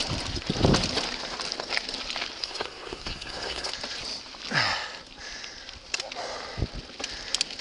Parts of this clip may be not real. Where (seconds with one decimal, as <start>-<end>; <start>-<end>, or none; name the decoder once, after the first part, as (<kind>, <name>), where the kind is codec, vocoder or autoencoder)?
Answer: 2.4-3.7 (codec, SNAC)